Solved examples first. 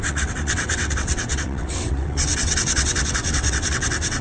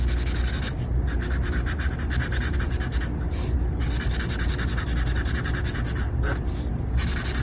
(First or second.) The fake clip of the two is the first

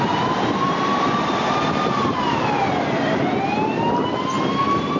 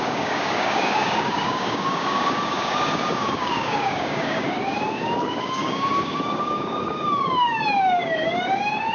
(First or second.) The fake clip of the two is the second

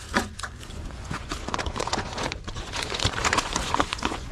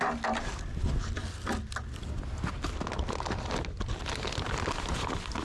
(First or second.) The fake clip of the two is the first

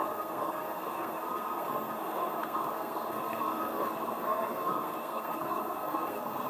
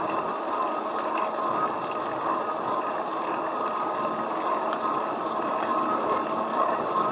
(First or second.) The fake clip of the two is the first